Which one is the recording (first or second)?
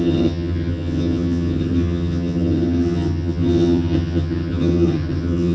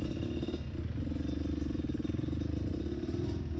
second